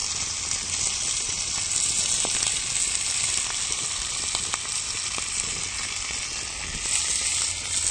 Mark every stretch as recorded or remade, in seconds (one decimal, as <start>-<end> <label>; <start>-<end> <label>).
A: 0.0-7.9 recorded